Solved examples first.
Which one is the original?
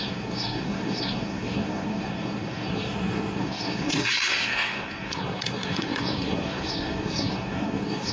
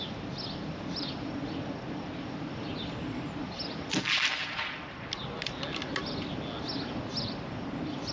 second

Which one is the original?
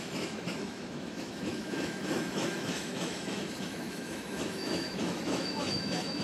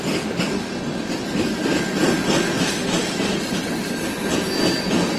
second